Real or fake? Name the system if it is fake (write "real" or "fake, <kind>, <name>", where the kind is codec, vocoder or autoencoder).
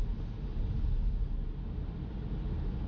real